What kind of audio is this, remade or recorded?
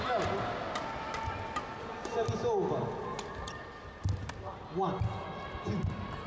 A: recorded